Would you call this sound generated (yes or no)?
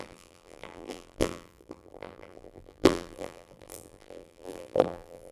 yes